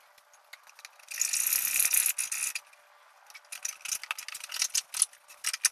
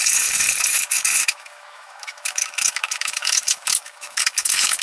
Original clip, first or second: first